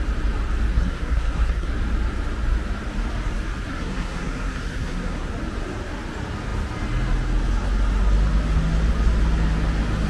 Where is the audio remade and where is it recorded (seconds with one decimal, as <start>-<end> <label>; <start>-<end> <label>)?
0.0-0.7 recorded; 0.7-1.7 remade; 1.7-3.7 recorded; 3.7-5.3 remade; 5.3-10.1 recorded